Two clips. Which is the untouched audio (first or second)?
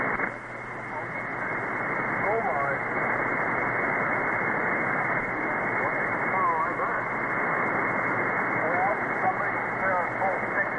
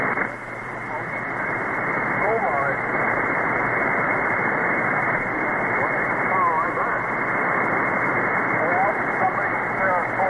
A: first